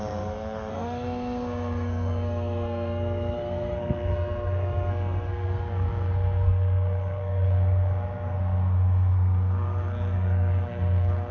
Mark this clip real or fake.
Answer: fake